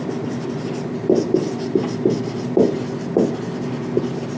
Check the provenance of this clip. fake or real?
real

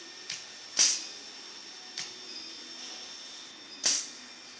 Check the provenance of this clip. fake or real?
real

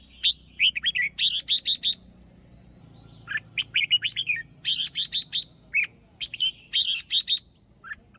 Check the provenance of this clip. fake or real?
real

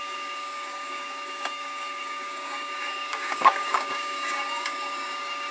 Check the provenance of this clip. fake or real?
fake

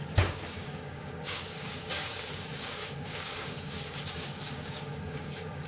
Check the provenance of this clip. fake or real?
fake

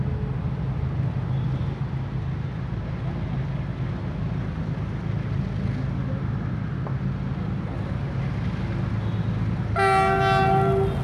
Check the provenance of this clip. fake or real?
real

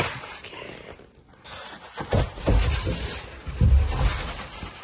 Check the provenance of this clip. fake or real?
real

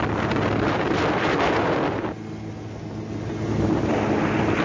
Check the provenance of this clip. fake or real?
real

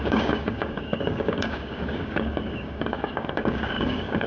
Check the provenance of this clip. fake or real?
fake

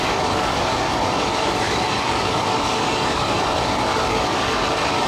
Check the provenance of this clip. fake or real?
fake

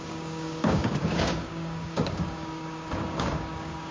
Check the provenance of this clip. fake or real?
fake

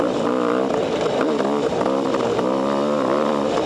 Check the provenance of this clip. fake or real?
real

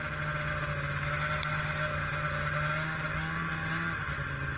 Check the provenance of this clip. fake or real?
real